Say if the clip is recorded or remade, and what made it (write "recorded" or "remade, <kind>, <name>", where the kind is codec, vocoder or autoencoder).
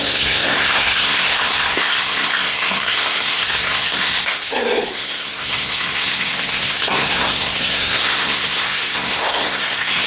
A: remade, codec, SNAC